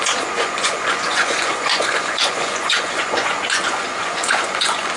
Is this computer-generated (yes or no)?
yes